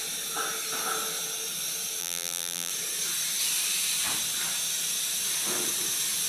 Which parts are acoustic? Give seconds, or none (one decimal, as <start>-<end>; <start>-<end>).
0.0-2.0; 2.7-6.3